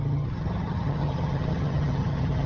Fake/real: fake